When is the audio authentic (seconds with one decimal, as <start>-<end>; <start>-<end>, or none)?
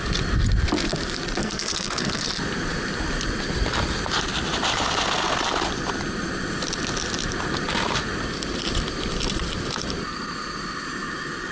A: 0.0-1.4; 2.3-11.5